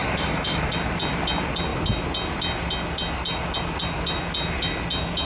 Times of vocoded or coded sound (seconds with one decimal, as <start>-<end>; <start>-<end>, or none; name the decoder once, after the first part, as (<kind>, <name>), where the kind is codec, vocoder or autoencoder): 0.0-0.7 (autoencoder, DAC-VAE)